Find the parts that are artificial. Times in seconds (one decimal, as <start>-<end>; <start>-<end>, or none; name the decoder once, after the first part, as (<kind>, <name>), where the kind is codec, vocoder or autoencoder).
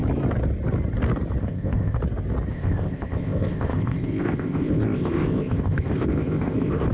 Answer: 1.4-2.0 (codec, ZipCodec); 2.5-6.9